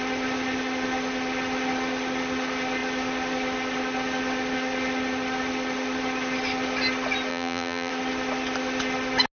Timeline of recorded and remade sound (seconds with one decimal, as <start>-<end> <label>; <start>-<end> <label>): 0.0-7.3 recorded; 7.3-7.9 remade; 7.9-9.3 recorded